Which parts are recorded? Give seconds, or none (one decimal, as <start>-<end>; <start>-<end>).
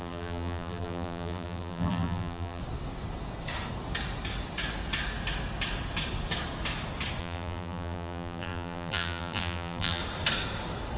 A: 2.6-7.2; 10.0-11.0